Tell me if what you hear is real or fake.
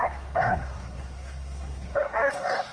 fake